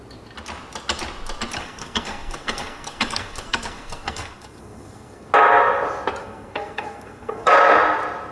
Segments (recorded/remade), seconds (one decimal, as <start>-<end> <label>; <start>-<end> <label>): 0.0-1.6 recorded; 1.6-5.3 remade; 5.3-6.2 recorded; 6.2-7.5 remade; 7.5-8.3 recorded